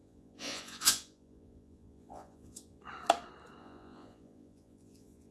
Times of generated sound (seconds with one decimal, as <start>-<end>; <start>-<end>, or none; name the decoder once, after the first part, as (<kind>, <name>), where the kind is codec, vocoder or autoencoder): 0.0-2.8 (vocoder, Vocos); 3.6-5.3